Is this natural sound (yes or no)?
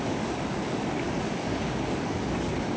no